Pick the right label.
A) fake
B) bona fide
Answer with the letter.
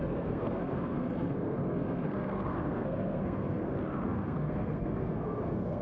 A